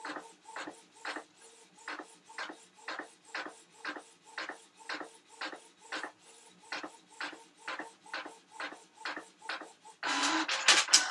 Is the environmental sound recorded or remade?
recorded